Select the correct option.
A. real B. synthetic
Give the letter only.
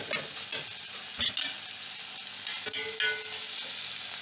A